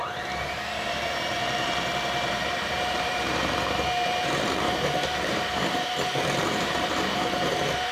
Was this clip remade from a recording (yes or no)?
yes